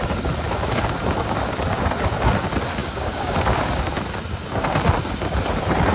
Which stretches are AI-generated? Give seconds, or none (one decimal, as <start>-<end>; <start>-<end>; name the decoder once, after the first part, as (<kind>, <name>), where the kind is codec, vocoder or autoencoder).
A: 2.8-3.8 (codec, DAC)